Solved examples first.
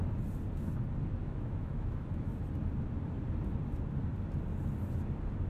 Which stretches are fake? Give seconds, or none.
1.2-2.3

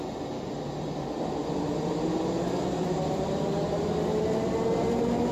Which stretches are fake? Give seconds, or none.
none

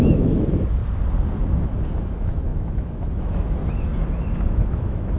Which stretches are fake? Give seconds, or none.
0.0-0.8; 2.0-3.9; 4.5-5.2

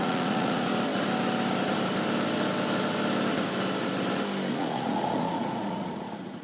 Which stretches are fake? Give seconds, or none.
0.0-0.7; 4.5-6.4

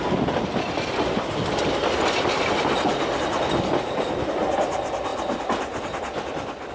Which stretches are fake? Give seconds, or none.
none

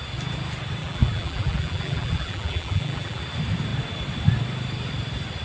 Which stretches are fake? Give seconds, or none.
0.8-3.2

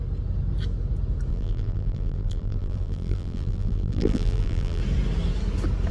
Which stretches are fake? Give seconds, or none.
1.3-4.8